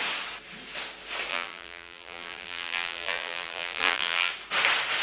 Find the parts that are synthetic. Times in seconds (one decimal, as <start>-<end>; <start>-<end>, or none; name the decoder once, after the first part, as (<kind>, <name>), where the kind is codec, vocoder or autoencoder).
1.3-4.3 (vocoder, BigVGAN v2)

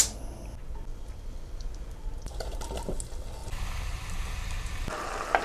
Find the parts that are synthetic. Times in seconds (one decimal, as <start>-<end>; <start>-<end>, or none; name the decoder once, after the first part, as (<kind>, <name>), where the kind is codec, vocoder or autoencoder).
0.9-2.2 (vocoder, BigVGAN v2); 3.4-5.4

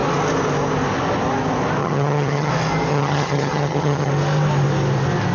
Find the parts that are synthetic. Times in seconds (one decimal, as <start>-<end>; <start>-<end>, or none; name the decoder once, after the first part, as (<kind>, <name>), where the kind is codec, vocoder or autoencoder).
1.8-2.5 (vocoder, HiFi-GAN); 2.9-4.1